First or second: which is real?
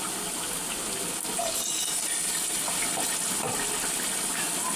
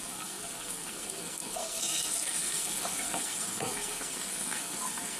first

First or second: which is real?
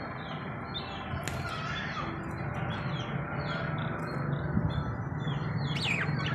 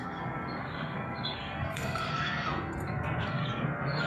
first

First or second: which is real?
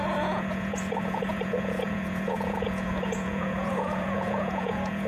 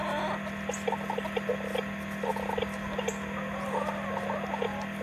second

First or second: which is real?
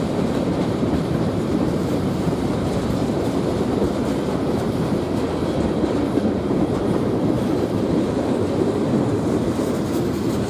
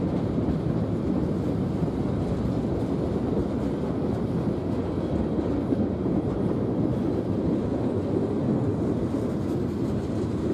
second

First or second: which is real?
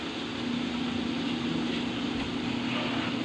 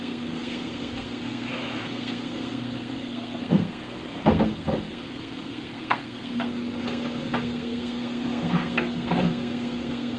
first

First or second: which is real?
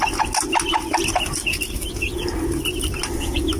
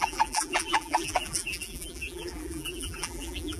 first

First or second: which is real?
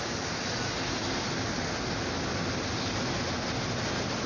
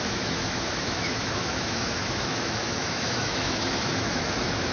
first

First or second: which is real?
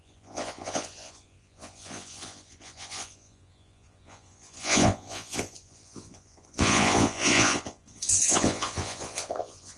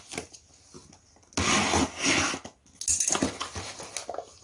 second